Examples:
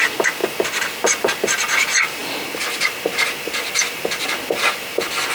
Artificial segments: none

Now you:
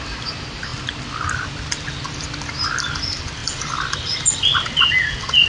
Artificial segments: none